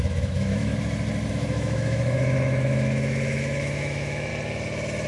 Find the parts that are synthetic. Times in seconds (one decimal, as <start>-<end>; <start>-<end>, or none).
0.0-0.7; 1.3-4.3